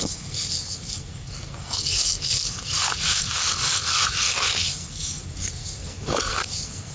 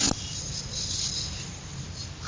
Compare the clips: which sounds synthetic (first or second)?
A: first